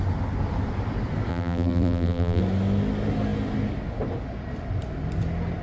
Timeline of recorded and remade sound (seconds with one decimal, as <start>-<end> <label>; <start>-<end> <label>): 0.0-1.3 recorded; 1.3-2.4 remade; 2.4-5.6 recorded